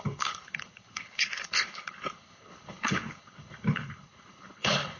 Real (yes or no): no